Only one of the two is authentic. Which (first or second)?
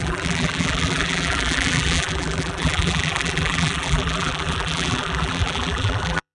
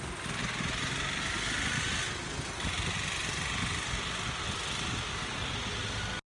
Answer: second